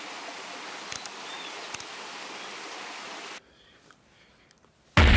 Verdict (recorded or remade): recorded